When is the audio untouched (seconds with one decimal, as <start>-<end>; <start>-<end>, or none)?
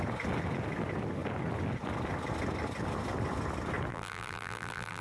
0.0-3.9